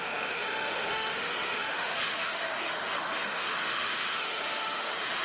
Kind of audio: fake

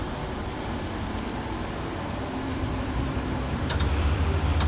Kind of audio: fake